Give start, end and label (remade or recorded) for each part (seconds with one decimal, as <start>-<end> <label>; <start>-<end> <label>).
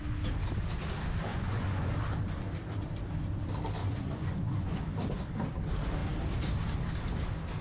0.0-1.3 recorded; 1.3-1.9 remade; 1.9-3.8 recorded; 3.8-4.8 remade; 4.8-7.6 recorded